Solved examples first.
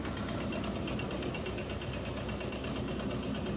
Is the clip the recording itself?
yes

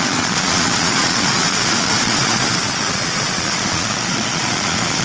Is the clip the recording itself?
no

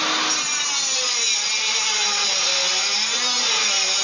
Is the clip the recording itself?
yes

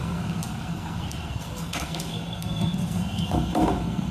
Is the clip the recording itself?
no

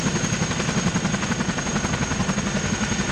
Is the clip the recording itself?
yes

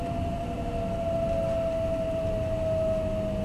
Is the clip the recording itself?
yes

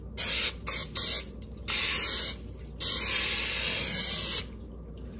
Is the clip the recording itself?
yes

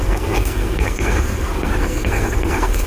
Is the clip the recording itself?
no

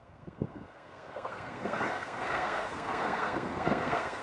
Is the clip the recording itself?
no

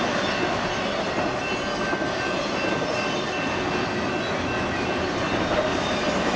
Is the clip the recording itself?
yes